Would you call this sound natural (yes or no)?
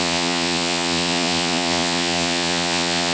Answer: no